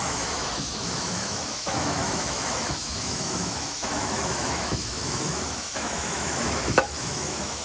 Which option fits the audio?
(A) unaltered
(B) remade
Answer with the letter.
B